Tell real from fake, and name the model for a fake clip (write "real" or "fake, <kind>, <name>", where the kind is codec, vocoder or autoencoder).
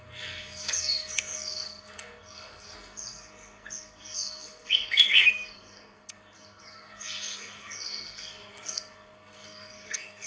fake, codec, SNAC